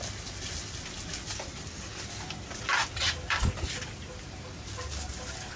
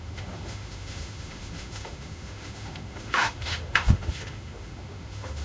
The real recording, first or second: first